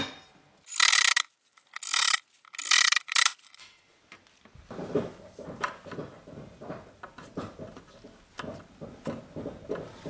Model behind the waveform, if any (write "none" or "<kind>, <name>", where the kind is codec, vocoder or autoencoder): none